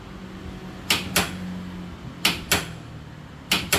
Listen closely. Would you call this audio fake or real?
real